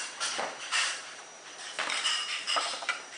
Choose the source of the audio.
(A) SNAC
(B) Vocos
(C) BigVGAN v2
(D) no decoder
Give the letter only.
C